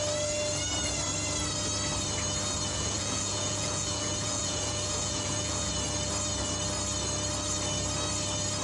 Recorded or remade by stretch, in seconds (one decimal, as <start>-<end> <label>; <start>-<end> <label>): 0.0-2.7 recorded; 2.7-5.7 remade; 5.7-8.6 recorded